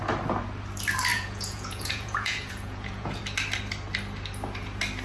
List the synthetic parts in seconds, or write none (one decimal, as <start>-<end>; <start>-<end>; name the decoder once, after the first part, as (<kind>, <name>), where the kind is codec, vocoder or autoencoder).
1.1-3.2 (vocoder, Vocos)